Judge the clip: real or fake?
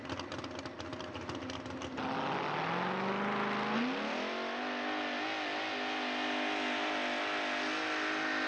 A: real